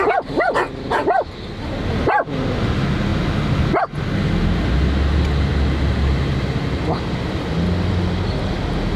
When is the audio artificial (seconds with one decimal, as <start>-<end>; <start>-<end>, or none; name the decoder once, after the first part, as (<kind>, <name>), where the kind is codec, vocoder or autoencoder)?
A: none